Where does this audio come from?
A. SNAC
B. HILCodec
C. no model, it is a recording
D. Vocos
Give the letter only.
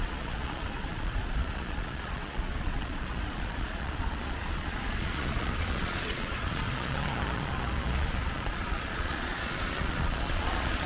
D